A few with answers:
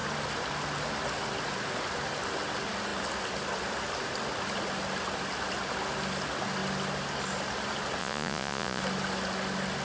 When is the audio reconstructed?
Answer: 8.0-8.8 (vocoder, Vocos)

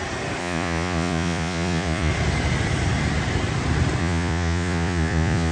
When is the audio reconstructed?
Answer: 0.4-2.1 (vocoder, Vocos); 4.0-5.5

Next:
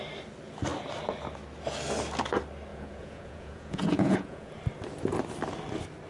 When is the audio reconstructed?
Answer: 2.7-4.6 (vocoder, Vocos)

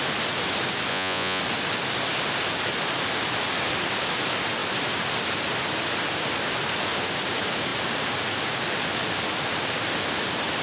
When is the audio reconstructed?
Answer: 0.9-1.4 (vocoder, Vocos)

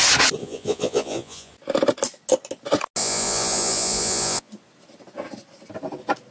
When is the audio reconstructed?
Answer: 0.4-1.5 (vocoder, Vocos); 3.0-4.5

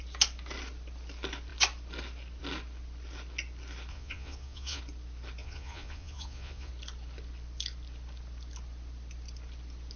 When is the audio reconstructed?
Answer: 3.9-4.8 (vocoder, Vocos); 5.4-6.7

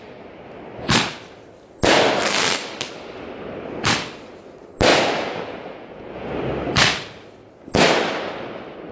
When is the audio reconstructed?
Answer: 4.9-6.3 (vocoder, Vocos)